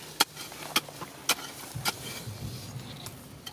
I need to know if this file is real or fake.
real